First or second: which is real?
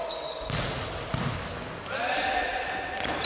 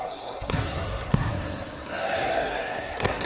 first